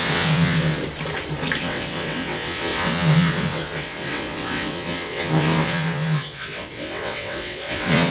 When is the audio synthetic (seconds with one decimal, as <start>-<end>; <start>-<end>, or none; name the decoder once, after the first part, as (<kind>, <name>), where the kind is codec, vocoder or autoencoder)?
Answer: 0.0-0.8 (vocoder, WaveNeXt); 1.6-8.1